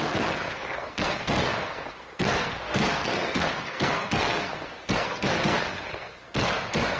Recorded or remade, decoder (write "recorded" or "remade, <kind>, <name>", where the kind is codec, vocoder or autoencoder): remade, codec, SNAC